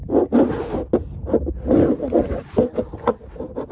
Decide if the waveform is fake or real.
real